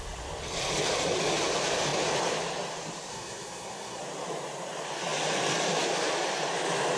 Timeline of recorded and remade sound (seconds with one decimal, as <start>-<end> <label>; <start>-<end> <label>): 0.0-3.1 recorded; 3.1-4.0 remade; 4.0-7.0 recorded